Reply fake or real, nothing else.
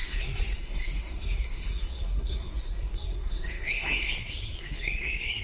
fake